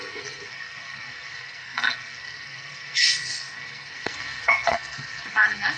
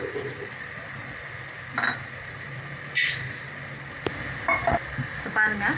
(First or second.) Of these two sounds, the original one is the second